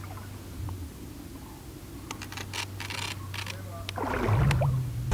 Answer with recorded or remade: recorded